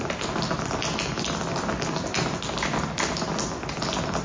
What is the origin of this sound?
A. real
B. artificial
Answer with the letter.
A